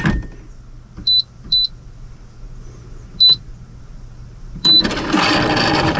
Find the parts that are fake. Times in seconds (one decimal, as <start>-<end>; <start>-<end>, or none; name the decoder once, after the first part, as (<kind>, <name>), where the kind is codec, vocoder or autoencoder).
none